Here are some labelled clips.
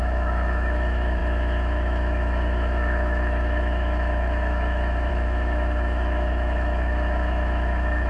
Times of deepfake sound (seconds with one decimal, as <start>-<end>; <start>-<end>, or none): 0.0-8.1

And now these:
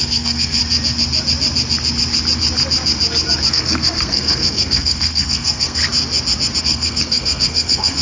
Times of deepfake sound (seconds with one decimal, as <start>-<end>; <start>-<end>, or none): 0.0-0.6; 3.5-5.8; 6.6-8.0

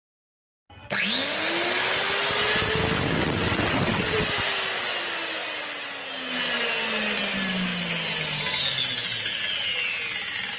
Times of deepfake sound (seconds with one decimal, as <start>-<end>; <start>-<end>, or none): 3.2-4.3